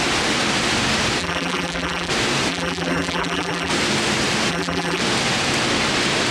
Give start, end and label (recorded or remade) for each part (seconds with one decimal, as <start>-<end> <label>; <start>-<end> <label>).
0.0-1.2 recorded; 1.2-2.1 remade; 2.1-2.5 recorded; 2.5-3.7 remade; 3.7-4.5 recorded; 4.5-5.0 remade; 5.0-6.3 recorded